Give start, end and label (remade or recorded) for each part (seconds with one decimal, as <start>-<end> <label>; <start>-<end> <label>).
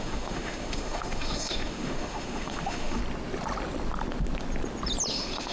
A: 0.0-3.0 remade; 3.0-5.1 recorded; 5.1-5.5 remade